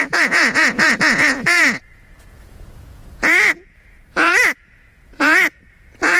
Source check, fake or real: fake